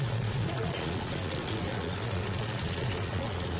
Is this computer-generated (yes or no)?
yes